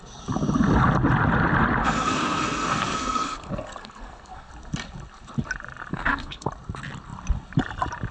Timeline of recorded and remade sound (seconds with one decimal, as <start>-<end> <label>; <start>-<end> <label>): 0.0-1.8 recorded; 1.8-4.5 remade; 4.5-5.9 recorded; 5.9-6.5 remade; 6.5-8.1 recorded